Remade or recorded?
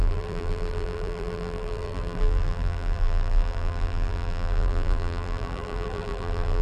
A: remade